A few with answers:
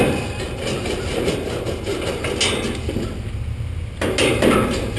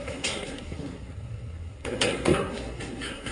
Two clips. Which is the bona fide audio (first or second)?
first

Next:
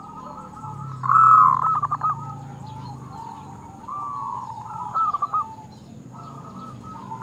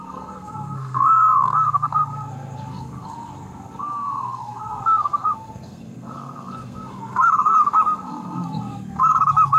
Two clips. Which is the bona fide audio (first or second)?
first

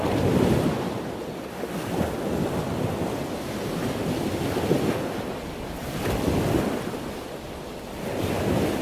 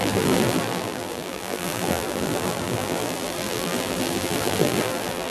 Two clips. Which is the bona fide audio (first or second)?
first